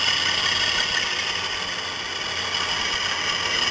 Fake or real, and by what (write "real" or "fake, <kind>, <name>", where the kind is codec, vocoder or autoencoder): real